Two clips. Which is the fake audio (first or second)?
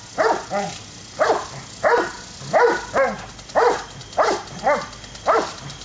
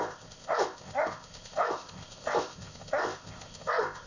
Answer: second